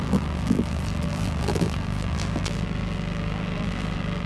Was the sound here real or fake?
fake